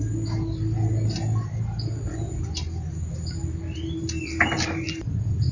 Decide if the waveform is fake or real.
real